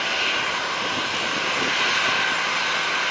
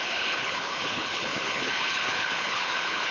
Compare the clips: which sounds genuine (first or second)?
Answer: first